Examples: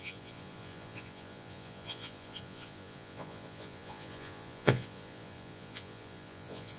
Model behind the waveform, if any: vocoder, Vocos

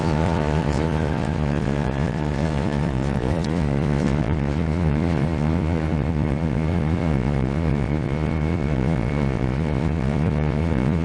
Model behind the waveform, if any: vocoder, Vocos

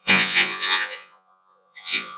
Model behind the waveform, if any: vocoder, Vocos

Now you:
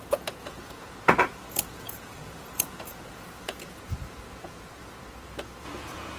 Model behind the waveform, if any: vocoder, Vocos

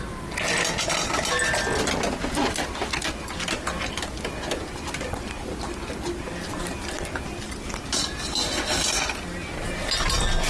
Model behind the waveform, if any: none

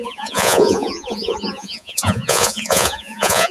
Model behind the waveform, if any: vocoder, Vocos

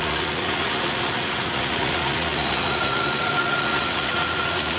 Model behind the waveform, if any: vocoder, Vocos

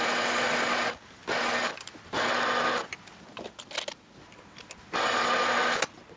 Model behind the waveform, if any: none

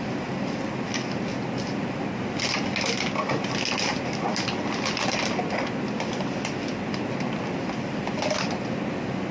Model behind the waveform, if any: none